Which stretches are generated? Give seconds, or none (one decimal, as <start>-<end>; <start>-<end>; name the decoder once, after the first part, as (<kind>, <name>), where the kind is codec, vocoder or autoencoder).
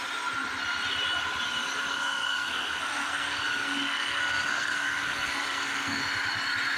1.9-6.0 (codec, SNAC)